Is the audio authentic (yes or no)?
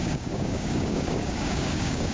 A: no